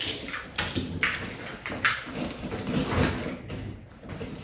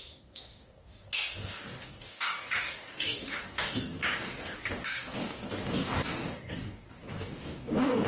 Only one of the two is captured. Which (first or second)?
first